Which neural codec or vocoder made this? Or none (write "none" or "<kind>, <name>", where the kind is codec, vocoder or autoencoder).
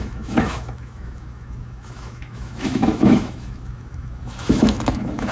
autoencoder, DAC-VAE